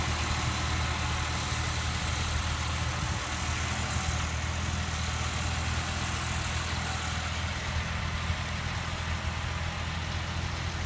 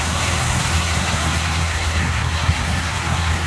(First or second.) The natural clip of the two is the first